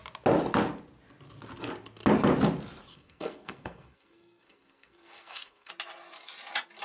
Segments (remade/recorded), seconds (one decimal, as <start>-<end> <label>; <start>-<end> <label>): 0.0-2.9 recorded; 2.9-5.7 remade; 5.7-6.8 recorded